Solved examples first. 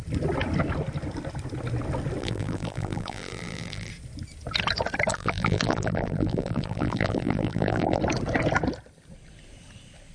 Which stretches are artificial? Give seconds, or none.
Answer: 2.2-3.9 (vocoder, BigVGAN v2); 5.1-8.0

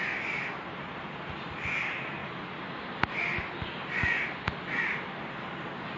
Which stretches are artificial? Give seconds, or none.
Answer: none